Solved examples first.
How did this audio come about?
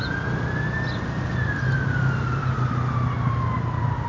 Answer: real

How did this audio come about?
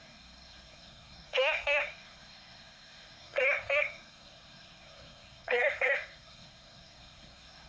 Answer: fake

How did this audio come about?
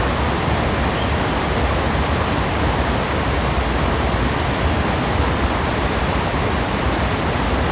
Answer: real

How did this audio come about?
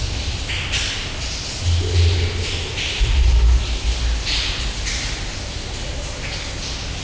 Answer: real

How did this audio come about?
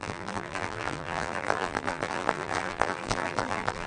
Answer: fake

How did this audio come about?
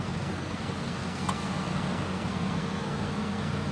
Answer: fake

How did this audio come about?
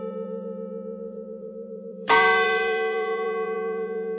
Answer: fake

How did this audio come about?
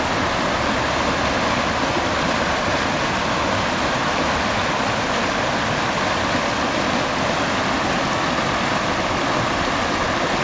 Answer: real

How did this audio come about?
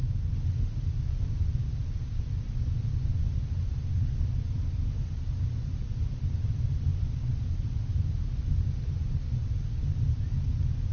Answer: real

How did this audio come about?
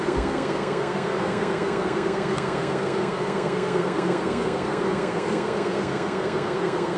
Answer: fake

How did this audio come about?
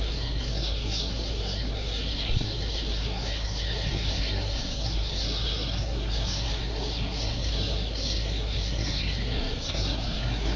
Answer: fake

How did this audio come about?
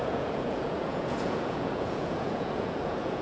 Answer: fake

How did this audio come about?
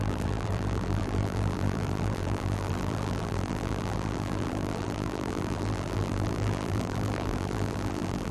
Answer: fake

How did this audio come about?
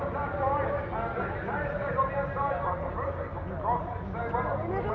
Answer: real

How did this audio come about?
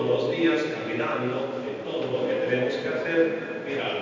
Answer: real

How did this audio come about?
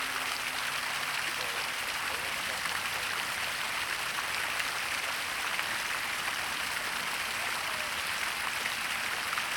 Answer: real